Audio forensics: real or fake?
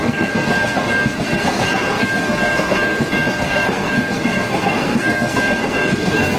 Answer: fake